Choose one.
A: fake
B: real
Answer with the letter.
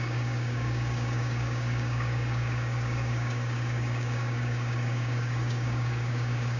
A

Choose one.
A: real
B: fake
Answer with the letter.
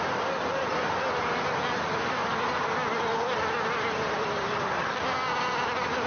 A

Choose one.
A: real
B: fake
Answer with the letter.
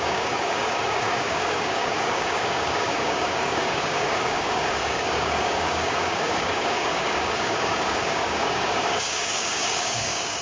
B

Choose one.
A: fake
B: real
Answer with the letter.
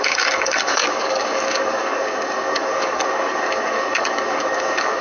A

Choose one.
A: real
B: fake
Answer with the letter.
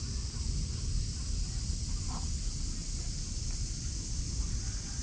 A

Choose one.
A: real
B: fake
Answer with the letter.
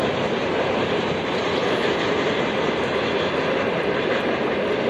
A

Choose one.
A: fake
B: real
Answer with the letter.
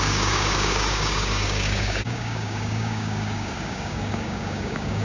A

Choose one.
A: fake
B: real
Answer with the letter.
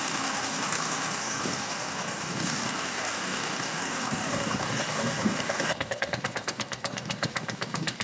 A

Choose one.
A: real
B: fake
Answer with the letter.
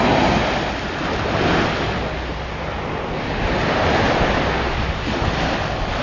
A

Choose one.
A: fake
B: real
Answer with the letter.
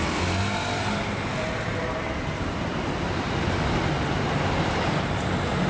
B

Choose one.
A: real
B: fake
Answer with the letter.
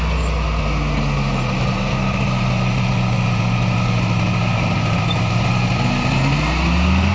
A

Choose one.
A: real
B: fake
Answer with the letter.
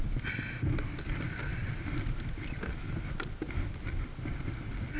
A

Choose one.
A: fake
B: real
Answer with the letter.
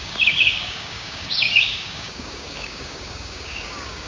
A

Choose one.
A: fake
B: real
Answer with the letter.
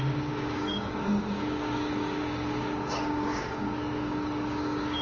A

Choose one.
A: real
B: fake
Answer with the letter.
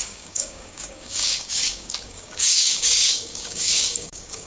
B